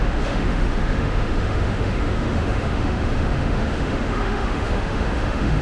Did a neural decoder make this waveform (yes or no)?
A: yes